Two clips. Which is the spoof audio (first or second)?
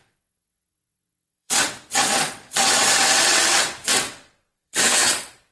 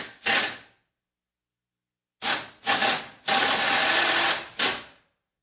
first